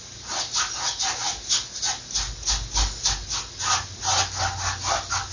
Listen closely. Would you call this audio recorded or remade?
recorded